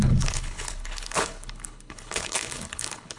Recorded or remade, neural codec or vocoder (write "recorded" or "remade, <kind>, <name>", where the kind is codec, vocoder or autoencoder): remade, codec, HILCodec